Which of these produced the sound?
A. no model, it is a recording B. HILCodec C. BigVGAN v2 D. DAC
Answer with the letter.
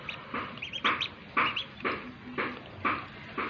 A